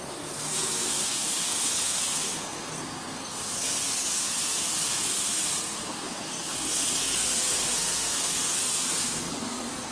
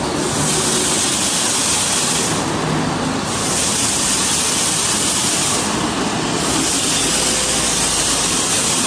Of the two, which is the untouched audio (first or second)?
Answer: second